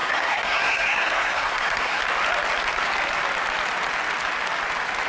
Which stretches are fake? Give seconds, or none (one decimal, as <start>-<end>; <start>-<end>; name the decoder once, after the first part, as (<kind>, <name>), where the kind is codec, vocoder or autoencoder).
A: 0.0-2.0 (codec, SNAC)